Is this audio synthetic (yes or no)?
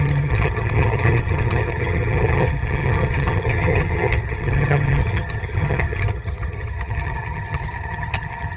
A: yes